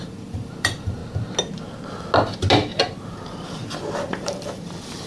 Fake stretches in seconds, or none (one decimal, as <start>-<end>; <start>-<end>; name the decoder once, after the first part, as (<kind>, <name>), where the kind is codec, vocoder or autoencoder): 0.0-1.0 (vocoder, BigVGAN v2); 3.0-3.6; 4.2-5.1